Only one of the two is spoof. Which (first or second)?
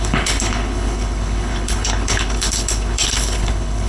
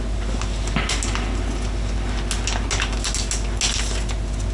first